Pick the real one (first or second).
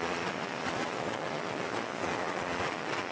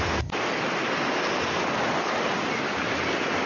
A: second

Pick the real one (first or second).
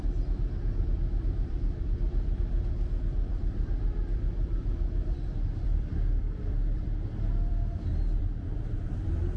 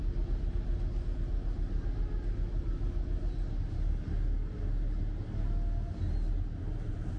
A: second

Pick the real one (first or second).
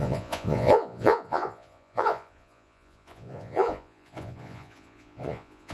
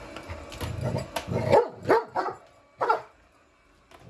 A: second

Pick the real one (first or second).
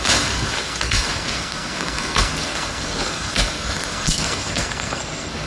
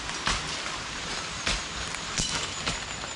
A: second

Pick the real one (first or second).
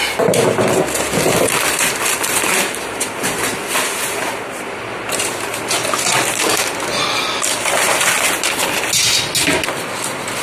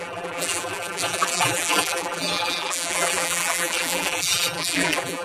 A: first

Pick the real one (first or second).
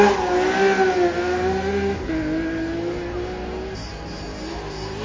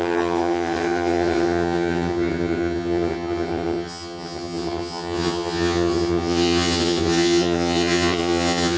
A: first